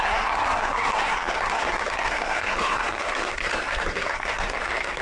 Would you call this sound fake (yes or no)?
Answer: yes